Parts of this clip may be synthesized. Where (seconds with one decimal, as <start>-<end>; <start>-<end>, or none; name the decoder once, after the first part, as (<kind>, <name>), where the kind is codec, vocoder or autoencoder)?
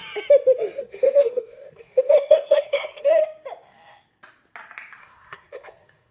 0.8-3.2 (codec, SNAC); 5.0-6.1